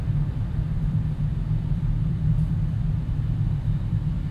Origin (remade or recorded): remade